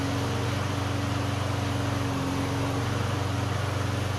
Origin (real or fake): real